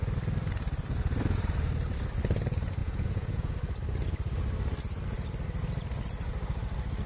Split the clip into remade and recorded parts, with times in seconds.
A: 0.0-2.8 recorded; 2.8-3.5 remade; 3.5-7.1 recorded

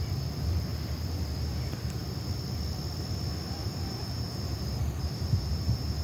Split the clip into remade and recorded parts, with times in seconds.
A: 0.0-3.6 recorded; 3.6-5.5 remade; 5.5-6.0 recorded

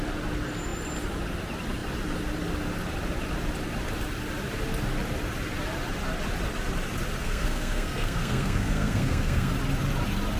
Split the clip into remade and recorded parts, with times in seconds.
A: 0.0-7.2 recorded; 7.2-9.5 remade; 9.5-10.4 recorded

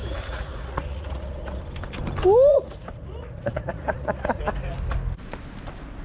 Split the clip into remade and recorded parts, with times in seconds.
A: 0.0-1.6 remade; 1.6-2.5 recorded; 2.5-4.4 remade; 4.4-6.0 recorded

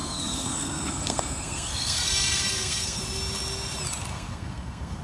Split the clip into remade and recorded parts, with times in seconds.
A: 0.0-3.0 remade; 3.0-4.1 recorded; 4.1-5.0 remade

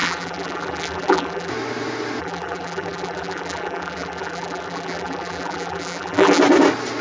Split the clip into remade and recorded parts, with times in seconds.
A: 0.0-1.5 remade; 1.5-2.2 recorded; 2.2-6.4 remade; 6.4-7.0 recorded